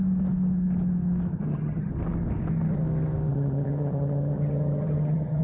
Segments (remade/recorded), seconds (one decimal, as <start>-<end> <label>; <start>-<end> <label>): 0.0-1.3 recorded; 1.3-1.9 remade; 1.9-3.3 recorded; 3.3-5.4 remade